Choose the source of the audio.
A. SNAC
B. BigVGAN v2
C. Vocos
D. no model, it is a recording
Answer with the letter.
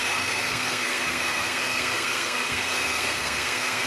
A